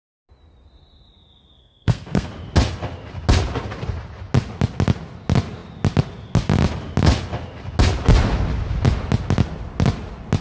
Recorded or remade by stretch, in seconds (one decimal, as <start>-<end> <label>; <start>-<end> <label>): 0.0-1.6 recorded; 1.6-2.3 remade; 2.3-10.4 recorded